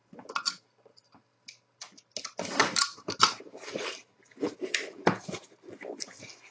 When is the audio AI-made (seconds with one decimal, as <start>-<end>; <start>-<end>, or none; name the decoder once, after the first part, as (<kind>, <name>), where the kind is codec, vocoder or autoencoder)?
none